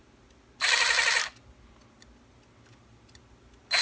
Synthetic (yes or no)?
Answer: no